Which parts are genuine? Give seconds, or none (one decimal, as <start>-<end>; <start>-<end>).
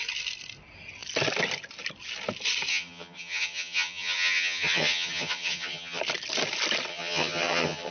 0.0-2.7; 6.0-6.9